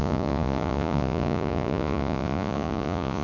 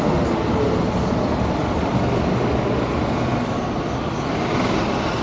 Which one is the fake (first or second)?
first